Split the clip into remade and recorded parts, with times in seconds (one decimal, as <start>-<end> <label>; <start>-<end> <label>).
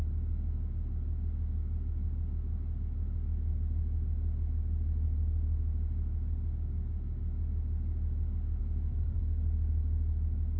0.0-8.6 recorded; 8.6-9.2 remade; 9.2-10.6 recorded